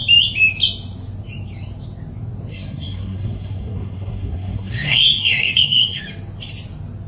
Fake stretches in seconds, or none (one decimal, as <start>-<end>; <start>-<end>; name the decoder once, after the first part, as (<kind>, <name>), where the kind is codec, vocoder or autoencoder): 2.5-6.0 (codec, SNAC)